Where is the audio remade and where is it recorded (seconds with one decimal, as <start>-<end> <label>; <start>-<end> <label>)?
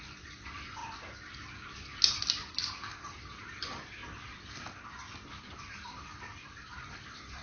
0.0-0.8 remade; 0.8-3.4 recorded; 3.4-4.0 remade; 4.0-5.4 recorded; 5.4-7.4 remade